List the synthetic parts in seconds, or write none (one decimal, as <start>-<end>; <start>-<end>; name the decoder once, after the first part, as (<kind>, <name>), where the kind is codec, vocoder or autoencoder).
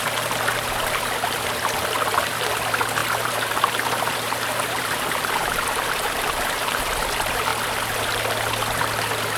3.0-6.8 (vocoder, BigVGAN v2)